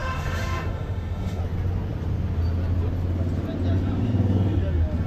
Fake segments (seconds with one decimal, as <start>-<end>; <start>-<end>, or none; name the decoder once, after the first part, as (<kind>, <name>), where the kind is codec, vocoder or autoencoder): 0.0-1.4 (autoencoder, DAC-VAE)

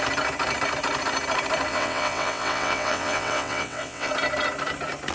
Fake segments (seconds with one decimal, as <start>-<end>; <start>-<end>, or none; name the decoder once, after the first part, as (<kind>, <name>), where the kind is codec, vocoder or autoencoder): 1.7-4.1 (vocoder, WaveNeXt)

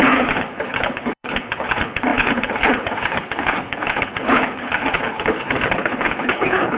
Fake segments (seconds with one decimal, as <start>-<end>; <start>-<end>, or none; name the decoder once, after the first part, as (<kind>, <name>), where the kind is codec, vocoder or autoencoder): 0.0-6.8 (codec, HILCodec)

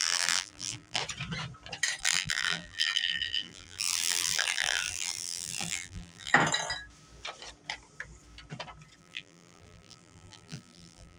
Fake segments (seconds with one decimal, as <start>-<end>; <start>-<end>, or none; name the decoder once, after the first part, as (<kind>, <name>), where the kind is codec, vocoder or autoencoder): 0.0-1.0 (vocoder, BigVGAN v2); 2.0-6.3; 9.0-11.2

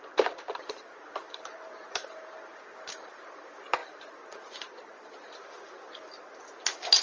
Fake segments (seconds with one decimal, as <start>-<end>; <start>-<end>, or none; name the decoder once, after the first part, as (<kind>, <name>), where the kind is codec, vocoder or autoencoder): 0.0-7.0 (vocoder, BigVGAN v2)

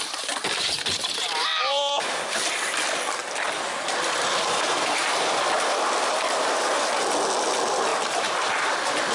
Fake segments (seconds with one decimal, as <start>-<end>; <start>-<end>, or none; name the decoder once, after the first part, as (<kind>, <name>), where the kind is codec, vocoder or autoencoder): 1.5-6.5 (vocoder, BigVGAN v2); 7.9-9.1

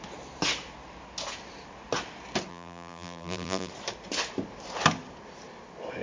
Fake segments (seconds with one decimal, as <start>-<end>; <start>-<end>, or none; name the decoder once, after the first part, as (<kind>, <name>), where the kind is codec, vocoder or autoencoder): 2.5-3.7 (vocoder, BigVGAN v2)

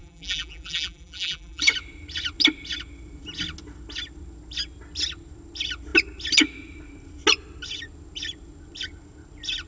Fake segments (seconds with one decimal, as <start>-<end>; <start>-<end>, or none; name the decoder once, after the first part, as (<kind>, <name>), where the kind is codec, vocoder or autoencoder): 0.0-1.6 (vocoder, BigVGAN v2)